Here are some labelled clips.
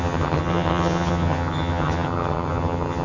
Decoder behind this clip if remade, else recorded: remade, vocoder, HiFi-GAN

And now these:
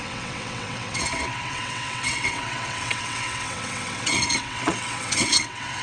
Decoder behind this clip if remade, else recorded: remade, vocoder, WaveNeXt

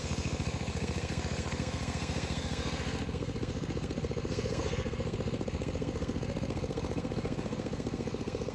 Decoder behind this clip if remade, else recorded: remade, codec, SNAC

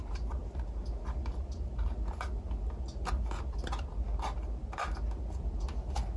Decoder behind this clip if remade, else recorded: recorded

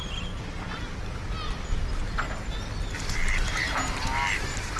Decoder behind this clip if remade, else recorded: recorded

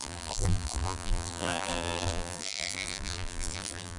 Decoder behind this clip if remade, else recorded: remade, vocoder, BigVGAN v2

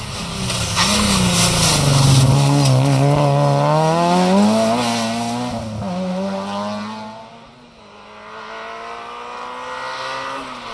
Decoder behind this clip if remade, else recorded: recorded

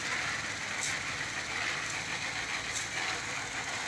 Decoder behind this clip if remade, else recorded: recorded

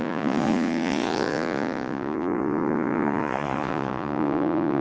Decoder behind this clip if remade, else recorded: remade, vocoder, Vocos